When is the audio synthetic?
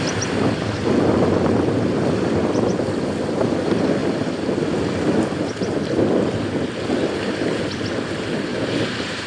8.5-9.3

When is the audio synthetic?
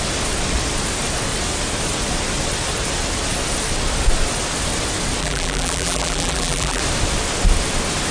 5.2-6.8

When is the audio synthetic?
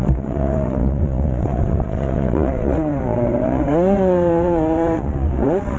0.0-5.8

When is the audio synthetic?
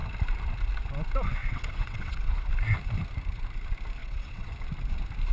1.4-2.5; 4.0-4.5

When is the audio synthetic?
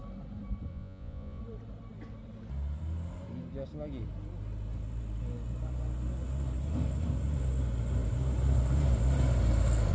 0.7-1.4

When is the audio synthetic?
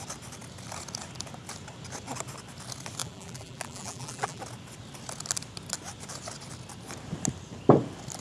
3.0-4.4